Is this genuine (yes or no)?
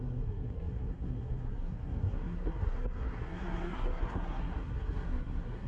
no